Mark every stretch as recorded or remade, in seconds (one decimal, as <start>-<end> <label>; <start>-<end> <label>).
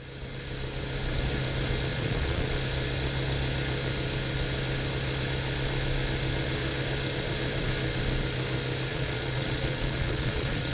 0.0-1.9 recorded; 1.9-2.5 remade; 2.5-8.9 recorded; 8.9-10.7 remade